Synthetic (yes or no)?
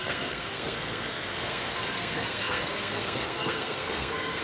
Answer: yes